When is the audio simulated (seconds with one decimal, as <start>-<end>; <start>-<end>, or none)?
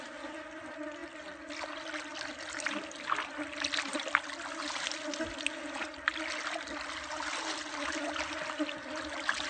none